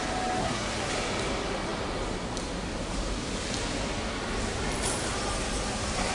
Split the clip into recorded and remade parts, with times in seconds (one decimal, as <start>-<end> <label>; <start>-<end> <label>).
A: 0.0-0.4 recorded; 0.4-0.9 remade; 0.9-6.1 recorded